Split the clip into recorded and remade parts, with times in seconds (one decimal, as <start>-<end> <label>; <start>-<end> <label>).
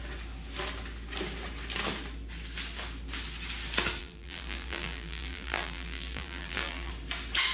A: 0.0-4.0 recorded; 4.0-6.9 remade; 6.9-7.5 recorded